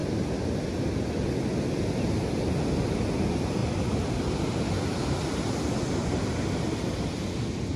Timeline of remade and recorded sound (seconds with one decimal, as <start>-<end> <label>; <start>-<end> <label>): 0.0-7.8 recorded